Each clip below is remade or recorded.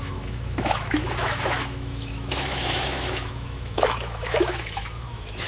remade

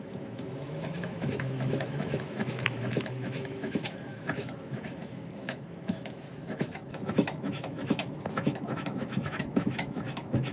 remade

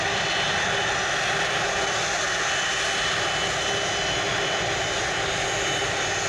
recorded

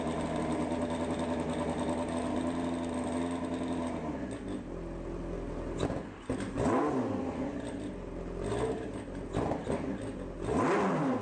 recorded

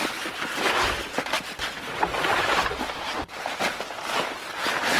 recorded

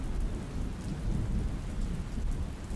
recorded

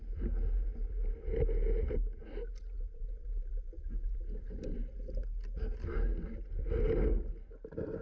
recorded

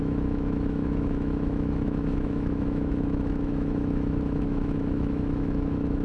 remade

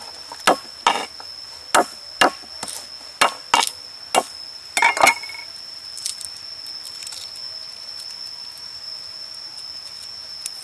recorded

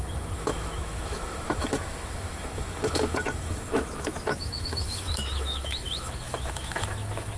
remade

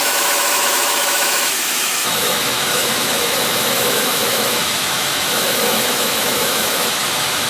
remade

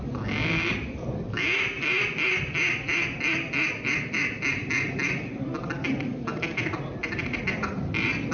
recorded